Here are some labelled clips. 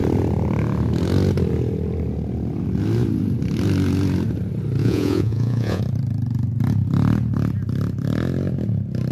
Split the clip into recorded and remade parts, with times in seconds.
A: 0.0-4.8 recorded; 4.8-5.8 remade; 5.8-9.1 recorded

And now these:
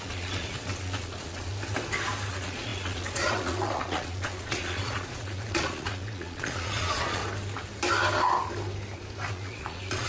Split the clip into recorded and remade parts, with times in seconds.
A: 0.0-1.5 remade; 1.5-2.3 recorded; 2.3-7.2 remade; 7.2-9.3 recorded; 9.3-10.1 remade